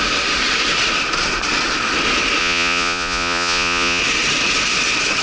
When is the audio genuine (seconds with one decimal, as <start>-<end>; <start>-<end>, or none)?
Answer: 0.0-2.4; 4.0-5.2